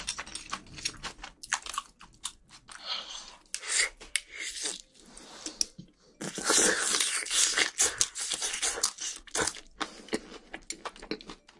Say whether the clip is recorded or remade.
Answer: recorded